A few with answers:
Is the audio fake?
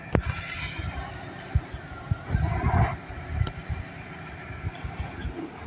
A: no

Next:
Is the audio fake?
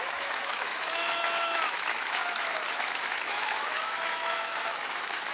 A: yes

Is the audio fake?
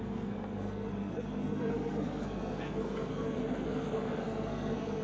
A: yes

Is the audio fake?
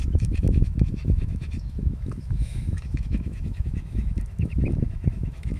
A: yes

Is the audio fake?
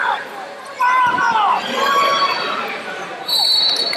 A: yes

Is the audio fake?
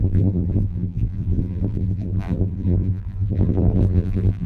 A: yes